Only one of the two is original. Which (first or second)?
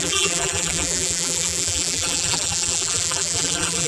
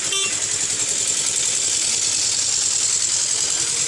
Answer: second